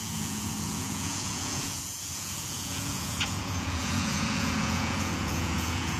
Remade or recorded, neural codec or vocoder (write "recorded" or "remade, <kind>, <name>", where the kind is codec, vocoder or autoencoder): remade, vocoder, Vocos